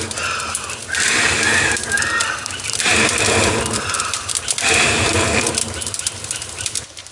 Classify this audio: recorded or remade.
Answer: remade